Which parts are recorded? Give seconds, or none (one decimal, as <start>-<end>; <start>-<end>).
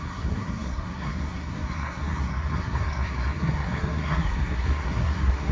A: none